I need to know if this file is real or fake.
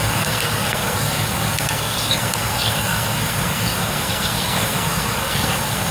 fake